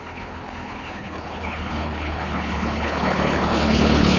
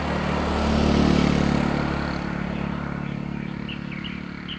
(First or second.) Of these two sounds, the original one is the second